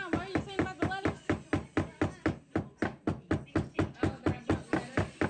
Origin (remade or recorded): recorded